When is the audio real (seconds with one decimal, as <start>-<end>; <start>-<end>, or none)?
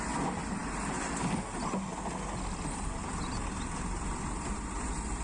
0.0-5.2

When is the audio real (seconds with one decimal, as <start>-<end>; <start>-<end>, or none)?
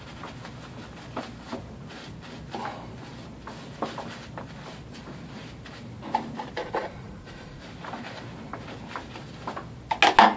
0.0-6.6; 7.6-10.4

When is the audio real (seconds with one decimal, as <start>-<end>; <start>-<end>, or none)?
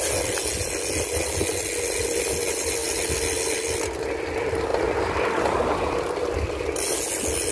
0.0-7.5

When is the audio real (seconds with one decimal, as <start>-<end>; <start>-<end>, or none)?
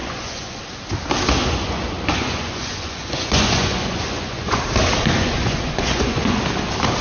0.6-1.4; 4.6-5.2; 6.4-7.0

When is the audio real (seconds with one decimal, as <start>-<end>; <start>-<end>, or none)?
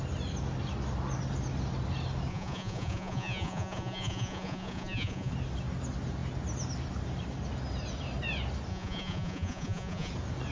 0.0-2.3; 5.3-8.7; 10.1-10.5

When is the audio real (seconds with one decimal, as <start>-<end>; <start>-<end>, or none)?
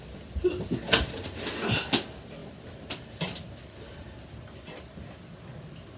0.0-6.0